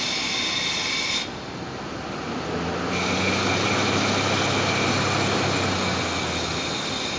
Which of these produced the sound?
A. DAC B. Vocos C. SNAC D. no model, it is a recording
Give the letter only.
D